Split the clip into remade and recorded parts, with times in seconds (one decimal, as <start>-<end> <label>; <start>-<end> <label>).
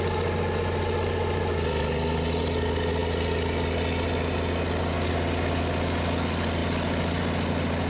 0.0-7.9 recorded